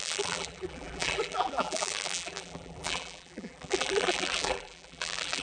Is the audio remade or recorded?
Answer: remade